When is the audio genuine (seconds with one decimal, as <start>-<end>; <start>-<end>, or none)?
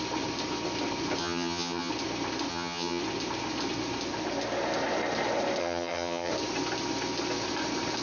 0.0-1.2; 1.9-2.5; 3.0-5.6; 6.3-8.0